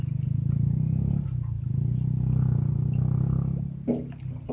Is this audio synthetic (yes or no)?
no